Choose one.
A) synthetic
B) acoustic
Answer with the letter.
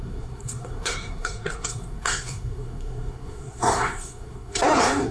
A